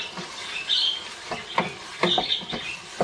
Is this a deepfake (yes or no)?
no